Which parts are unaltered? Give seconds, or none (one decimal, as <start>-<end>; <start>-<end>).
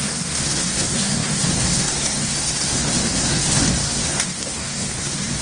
none